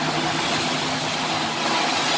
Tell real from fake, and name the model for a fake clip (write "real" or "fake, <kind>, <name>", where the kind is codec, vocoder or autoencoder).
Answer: real